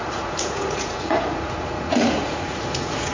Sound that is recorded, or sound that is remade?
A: remade